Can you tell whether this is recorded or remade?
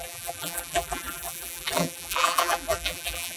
remade